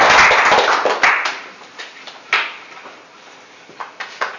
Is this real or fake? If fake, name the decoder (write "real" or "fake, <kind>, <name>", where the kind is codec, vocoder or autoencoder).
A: real